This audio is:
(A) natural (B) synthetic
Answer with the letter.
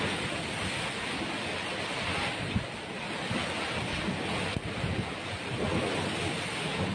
A